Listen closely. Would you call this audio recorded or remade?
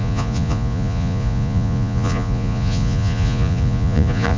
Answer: remade